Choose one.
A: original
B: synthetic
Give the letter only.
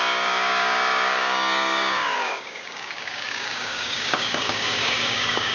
B